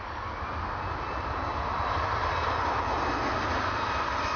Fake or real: real